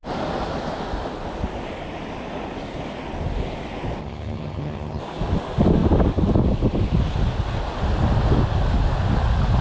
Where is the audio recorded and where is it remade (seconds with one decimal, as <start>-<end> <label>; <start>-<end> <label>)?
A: 0.0-4.0 recorded; 4.0-5.0 remade; 5.0-9.6 recorded